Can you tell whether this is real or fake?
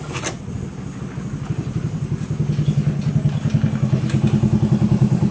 real